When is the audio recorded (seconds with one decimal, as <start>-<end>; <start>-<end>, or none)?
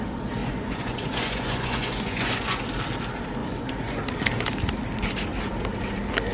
0.0-0.4; 2.6-3.4; 4.0-6.3